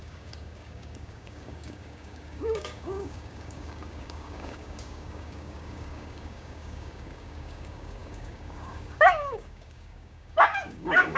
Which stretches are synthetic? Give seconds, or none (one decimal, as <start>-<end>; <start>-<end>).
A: 0.0-11.2